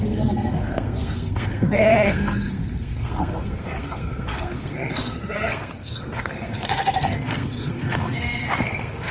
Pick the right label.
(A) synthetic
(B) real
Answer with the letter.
A